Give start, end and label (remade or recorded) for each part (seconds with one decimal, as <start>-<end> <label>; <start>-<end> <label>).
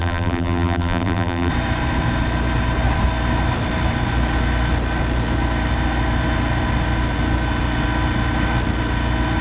0.0-1.5 remade; 1.5-9.4 recorded